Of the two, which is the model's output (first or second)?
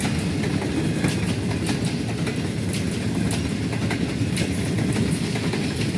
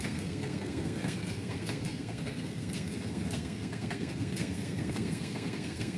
second